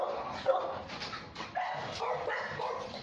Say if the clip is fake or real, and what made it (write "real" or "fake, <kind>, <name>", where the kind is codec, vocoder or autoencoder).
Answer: real